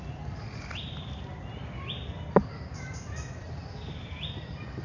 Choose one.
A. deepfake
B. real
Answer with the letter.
B